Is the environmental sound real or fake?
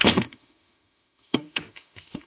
fake